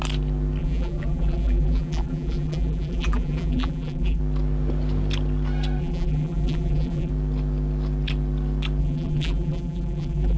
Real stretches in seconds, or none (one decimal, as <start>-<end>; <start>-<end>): 0.0-0.6; 4.2-5.8; 7.1-8.8